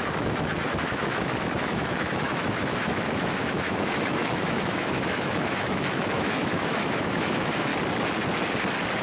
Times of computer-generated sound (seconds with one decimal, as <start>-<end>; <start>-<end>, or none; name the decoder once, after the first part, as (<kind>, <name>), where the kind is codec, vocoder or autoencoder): 0.0-7.7 (autoencoder, DAC-VAE)